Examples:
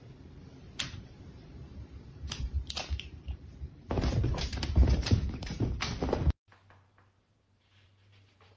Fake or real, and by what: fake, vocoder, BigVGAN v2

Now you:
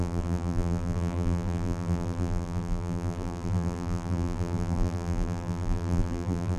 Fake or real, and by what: fake, vocoder, BigVGAN v2